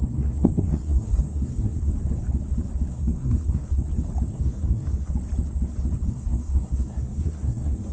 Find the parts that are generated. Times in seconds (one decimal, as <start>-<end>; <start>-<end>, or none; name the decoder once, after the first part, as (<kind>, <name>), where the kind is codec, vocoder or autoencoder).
0.0-1.9 (codec, SNAC); 2.9-3.9; 4.3-5.1; 6.1-7.9